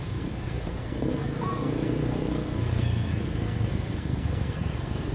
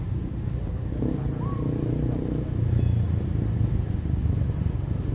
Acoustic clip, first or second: second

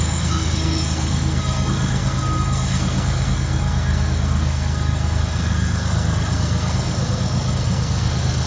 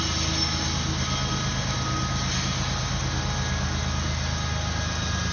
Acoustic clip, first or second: second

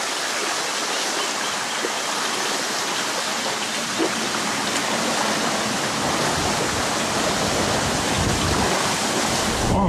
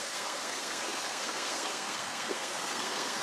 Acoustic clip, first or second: first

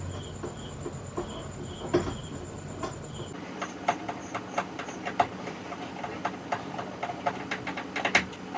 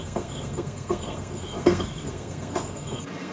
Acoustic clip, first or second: first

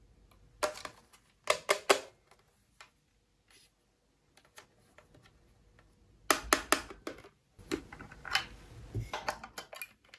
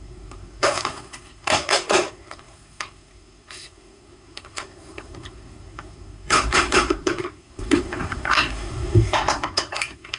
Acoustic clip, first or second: first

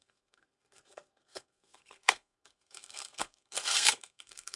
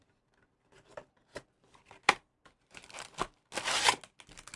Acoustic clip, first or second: second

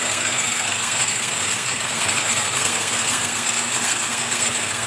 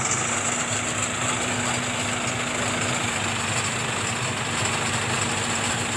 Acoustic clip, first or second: second